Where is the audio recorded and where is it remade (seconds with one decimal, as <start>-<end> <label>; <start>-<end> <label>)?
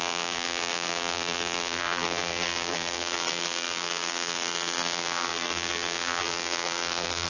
0.0-7.3 remade